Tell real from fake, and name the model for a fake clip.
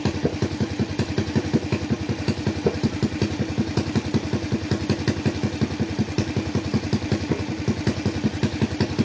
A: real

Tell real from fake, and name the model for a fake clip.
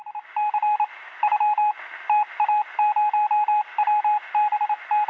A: real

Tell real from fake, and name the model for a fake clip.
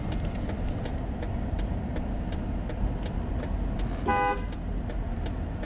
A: real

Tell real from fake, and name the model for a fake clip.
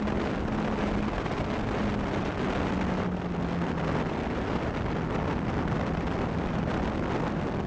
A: real